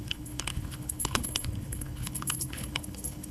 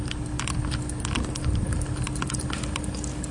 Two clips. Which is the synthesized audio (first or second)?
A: first